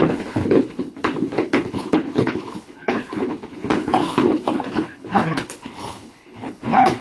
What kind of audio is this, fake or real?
fake